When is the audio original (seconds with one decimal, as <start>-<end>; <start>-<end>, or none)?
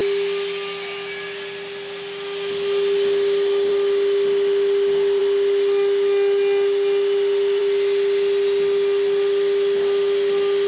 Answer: 0.0-10.7